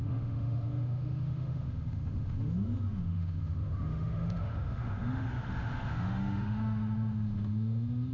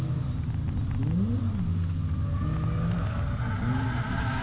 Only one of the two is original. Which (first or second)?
second